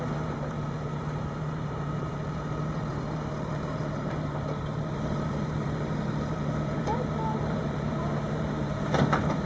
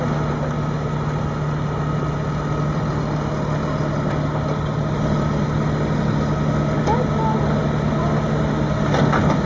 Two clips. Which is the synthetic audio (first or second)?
first